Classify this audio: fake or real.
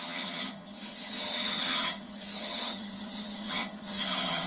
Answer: fake